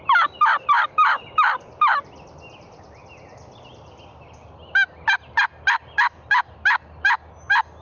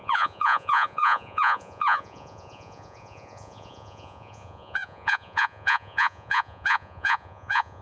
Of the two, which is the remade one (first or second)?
second